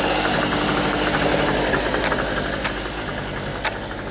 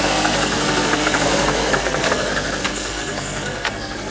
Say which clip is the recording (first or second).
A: first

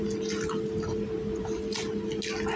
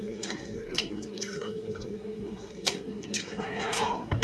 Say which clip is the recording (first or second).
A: first